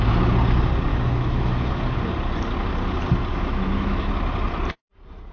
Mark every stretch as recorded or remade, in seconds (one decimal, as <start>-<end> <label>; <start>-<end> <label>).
0.0-0.9 recorded; 0.9-1.7 remade; 1.7-3.3 recorded; 3.3-4.1 remade; 4.1-5.3 recorded